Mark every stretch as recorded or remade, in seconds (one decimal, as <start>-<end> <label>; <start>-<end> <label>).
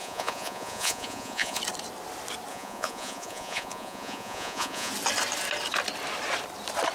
0.0-1.6 remade; 1.6-2.5 recorded; 2.5-4.9 remade; 4.9-6.9 recorded